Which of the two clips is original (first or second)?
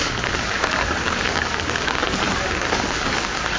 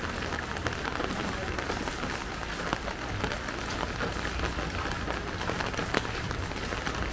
second